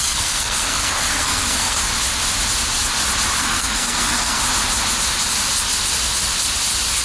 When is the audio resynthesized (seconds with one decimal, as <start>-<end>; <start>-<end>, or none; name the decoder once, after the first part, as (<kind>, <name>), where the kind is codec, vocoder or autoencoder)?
0.0-1.9 (codec, SNAC); 3.4-4.4